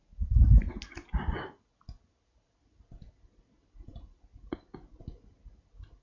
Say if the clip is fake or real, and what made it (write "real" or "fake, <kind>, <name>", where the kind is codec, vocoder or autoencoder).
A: real